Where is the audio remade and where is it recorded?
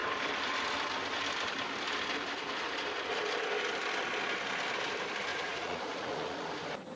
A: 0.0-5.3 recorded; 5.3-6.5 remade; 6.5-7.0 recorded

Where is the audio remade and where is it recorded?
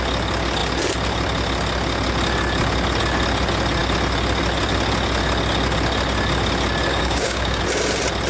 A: 0.0-6.9 recorded; 6.9-7.6 remade; 7.6-8.3 recorded